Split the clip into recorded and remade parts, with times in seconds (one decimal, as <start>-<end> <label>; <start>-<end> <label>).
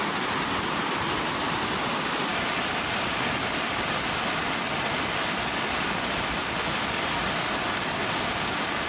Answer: 0.0-8.9 recorded